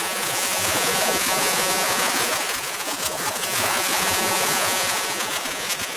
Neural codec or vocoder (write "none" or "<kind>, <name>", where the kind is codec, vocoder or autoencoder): vocoder, Vocos